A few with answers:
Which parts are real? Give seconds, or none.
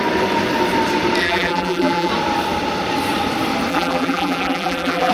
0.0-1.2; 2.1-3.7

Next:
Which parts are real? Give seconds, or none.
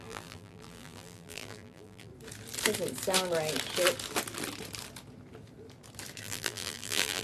2.1-6.2